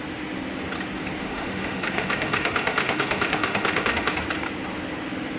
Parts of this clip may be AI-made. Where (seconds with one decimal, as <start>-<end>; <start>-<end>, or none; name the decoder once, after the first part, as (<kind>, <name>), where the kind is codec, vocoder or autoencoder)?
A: 1.2-4.1 (autoencoder, DAC-VAE)